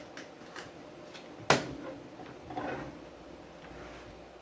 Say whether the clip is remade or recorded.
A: recorded